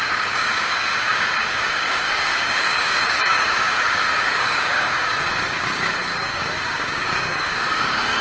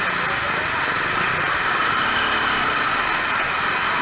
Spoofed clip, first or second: first